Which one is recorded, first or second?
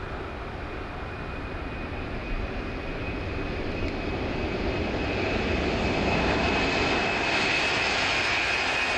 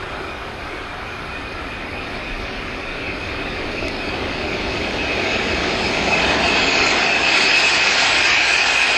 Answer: first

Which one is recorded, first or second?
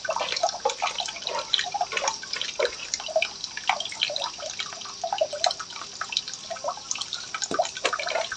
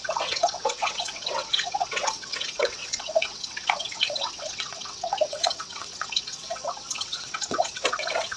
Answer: first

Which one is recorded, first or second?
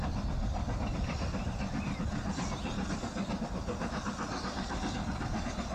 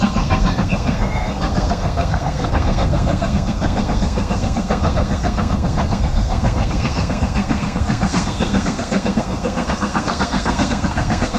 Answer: first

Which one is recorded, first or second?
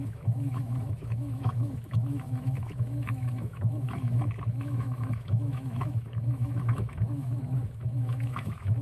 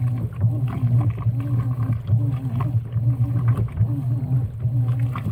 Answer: second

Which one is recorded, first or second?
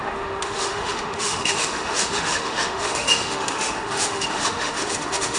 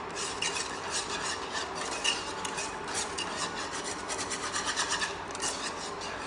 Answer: second